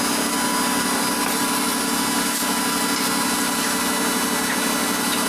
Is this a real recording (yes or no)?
yes